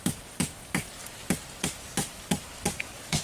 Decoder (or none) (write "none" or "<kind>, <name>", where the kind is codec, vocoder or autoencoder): none